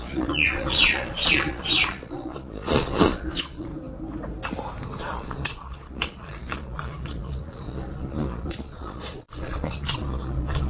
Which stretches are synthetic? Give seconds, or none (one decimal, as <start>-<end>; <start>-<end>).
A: 0.0-3.7; 5.0-10.7